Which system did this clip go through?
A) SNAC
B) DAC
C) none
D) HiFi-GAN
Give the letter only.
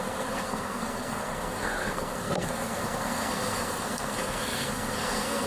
A